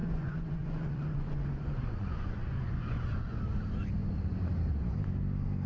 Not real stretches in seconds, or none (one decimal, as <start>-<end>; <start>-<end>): 0.0-3.4